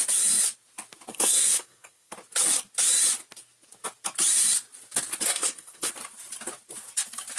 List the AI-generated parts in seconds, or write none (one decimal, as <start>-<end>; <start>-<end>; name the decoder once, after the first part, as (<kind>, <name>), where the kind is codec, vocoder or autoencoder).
1.1-2.1 (codec, SNAC); 5.3-5.9